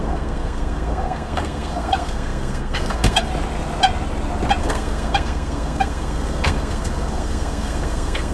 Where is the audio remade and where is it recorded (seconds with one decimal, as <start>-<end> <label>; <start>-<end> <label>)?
0.0-3.3 remade; 3.3-4.6 recorded; 4.6-8.3 remade